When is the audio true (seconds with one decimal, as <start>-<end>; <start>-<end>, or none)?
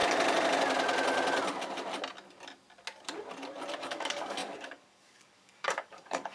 0.0-3.8